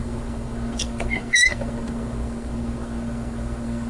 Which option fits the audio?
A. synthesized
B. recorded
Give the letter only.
A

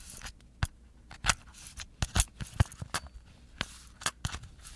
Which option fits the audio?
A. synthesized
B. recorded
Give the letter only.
B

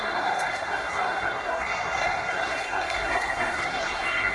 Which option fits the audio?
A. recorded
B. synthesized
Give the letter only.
B